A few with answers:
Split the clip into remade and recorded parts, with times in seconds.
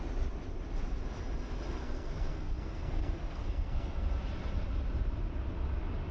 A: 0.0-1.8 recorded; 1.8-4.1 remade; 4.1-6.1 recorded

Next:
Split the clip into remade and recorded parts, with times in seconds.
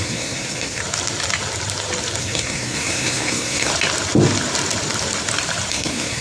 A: 0.0-0.8 remade; 0.8-2.2 recorded; 2.2-3.7 remade; 3.7-5.7 recorded; 5.7-6.2 remade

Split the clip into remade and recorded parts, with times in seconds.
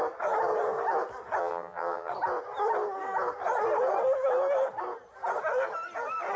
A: 0.0-1.4 recorded; 1.4-2.1 remade; 2.1-6.4 recorded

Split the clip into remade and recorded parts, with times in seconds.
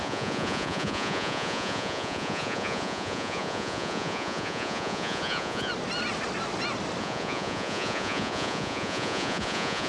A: 0.0-5.7 remade; 5.7-7.0 recorded; 7.0-9.9 remade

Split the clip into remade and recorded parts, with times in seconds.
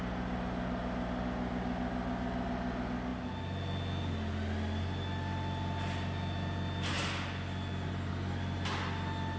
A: 0.0-9.4 recorded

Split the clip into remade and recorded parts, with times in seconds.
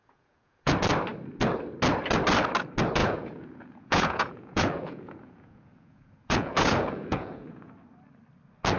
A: 0.0-0.7 remade; 0.7-3.0 recorded; 3.0-7.7 remade; 7.7-8.8 recorded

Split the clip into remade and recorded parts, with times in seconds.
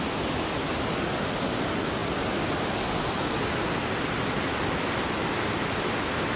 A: 0.0-6.4 recorded